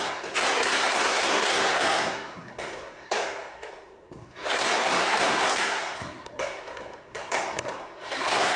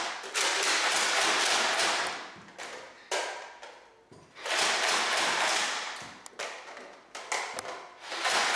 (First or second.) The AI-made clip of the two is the first